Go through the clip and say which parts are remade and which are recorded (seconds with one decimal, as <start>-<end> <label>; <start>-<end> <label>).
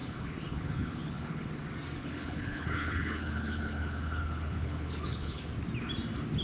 0.0-1.5 remade; 1.5-2.0 recorded; 2.0-5.5 remade; 5.5-6.4 recorded